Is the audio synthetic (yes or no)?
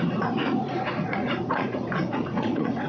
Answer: yes